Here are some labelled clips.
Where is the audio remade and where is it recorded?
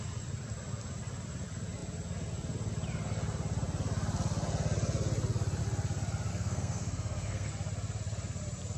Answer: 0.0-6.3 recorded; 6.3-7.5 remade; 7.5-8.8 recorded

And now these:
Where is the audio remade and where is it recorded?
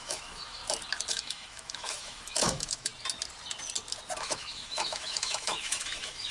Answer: 0.0-0.6 remade; 0.6-1.1 recorded; 1.1-2.9 remade; 2.9-4.2 recorded; 4.2-6.3 remade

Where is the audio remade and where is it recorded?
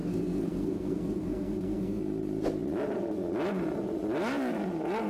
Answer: 0.0-2.0 remade; 2.0-5.1 recorded